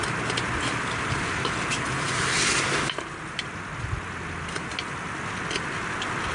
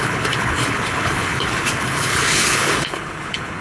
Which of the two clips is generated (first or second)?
second